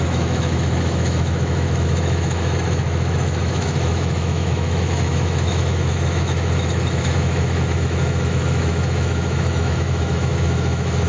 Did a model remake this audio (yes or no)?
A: yes